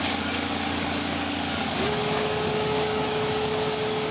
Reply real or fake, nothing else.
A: fake